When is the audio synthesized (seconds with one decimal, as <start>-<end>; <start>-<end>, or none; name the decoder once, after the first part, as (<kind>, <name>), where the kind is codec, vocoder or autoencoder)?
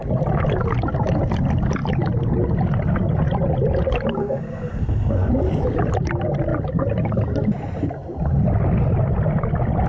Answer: 4.2-5.3 (codec, SNAC)